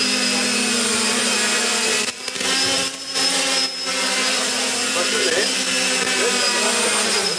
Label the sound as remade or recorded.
recorded